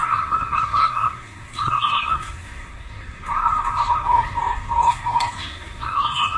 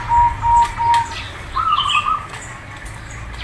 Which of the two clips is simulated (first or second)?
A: first